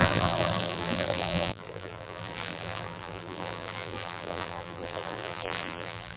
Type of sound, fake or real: fake